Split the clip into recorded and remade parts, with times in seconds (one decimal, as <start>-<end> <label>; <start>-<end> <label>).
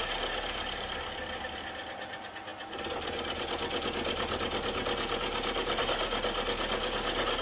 0.0-7.4 recorded